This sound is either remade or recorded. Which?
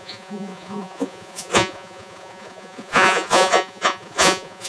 remade